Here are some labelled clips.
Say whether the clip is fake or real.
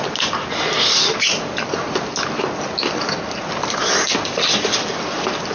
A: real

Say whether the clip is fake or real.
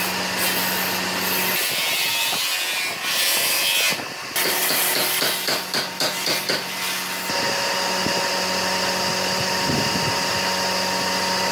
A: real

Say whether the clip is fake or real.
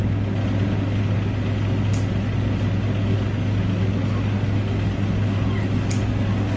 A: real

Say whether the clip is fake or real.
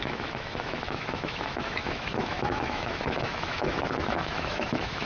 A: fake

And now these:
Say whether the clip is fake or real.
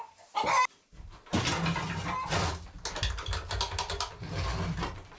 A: real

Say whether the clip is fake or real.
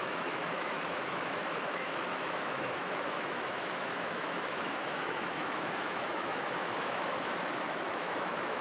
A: fake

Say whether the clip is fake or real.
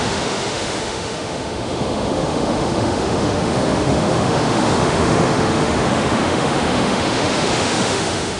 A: fake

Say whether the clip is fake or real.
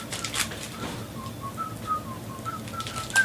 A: real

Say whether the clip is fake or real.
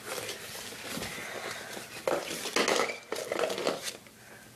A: real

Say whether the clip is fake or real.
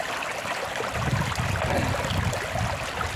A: real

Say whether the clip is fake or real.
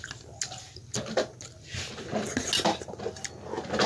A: real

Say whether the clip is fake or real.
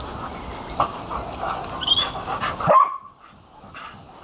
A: real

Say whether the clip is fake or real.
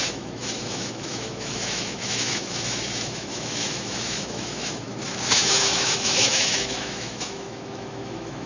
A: fake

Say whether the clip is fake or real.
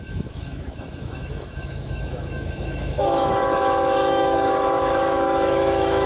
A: fake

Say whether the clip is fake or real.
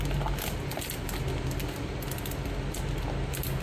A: real